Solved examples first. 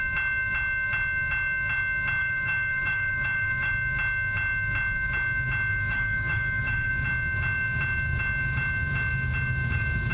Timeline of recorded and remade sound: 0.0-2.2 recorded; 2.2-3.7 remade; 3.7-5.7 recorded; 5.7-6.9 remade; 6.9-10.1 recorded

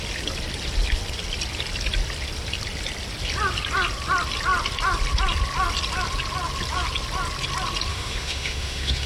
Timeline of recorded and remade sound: 0.0-7.9 recorded; 7.9-9.1 remade

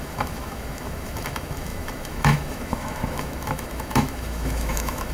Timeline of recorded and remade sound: 0.0-5.1 remade

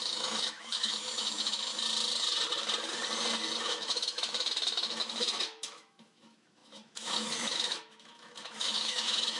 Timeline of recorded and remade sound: 0.0-1.7 remade; 1.7-3.6 recorded; 3.6-9.4 remade

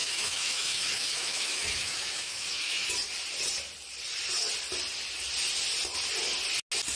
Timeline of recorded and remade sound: 0.0-2.9 remade; 2.9-7.0 recorded